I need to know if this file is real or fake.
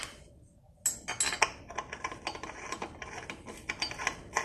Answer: real